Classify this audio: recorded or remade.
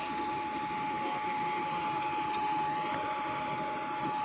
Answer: recorded